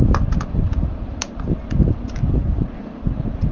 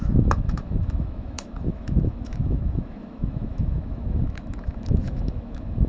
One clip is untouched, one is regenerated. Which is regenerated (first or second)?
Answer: second